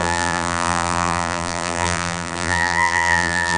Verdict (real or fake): fake